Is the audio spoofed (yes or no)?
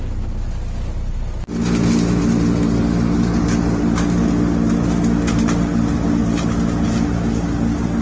no